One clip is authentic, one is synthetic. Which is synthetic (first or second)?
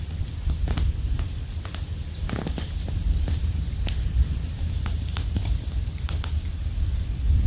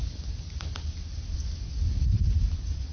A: first